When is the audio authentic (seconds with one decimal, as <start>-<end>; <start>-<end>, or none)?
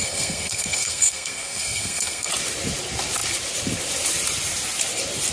2.3-5.3